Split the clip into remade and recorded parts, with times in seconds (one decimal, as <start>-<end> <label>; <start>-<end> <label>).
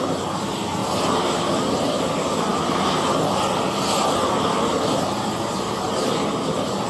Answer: 0.0-6.9 recorded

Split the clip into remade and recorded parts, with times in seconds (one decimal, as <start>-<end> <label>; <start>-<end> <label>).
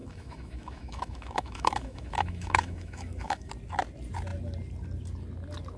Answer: 0.0-3.5 remade; 3.5-5.8 recorded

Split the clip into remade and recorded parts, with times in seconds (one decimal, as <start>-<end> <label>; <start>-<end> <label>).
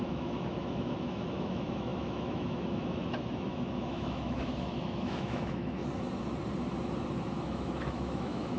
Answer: 0.0-5.8 remade; 5.8-7.4 recorded; 7.4-8.6 remade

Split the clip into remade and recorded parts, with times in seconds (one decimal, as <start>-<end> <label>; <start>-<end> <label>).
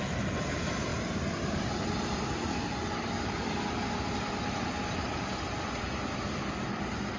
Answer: 0.0-7.2 recorded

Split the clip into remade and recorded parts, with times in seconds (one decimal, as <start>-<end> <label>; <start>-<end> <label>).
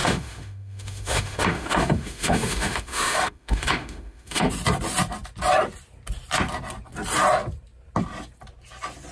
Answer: 0.0-4.5 remade; 4.5-9.1 recorded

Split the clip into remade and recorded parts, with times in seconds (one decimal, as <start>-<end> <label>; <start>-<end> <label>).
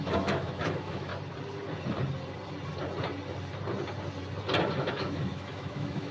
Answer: 0.0-1.1 remade; 1.1-4.8 recorded; 4.8-6.1 remade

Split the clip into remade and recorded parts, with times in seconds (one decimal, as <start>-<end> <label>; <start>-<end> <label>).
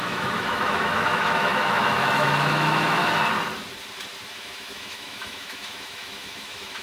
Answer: 0.0-3.0 remade; 3.0-4.3 recorded; 4.3-6.8 remade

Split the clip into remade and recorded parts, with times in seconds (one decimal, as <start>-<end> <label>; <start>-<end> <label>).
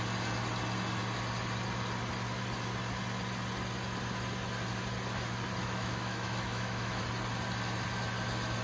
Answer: 0.0-5.6 recorded; 5.6-7.0 remade; 7.0-8.6 recorded